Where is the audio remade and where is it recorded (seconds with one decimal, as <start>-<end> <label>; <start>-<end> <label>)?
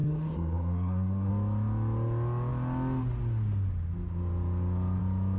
0.0-1.3 remade; 1.3-5.4 recorded